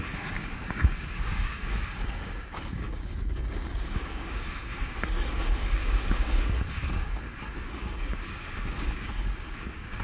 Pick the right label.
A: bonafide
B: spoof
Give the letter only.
B